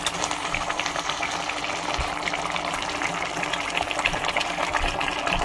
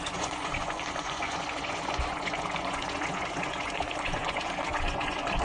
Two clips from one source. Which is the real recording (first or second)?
first